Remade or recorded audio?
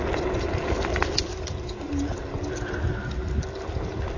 recorded